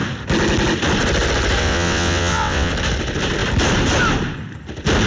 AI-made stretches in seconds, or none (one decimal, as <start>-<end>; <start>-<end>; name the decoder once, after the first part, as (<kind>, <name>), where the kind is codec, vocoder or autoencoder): 1.6-2.7 (vocoder, WaveNeXt)